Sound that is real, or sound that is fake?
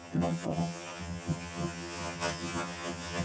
fake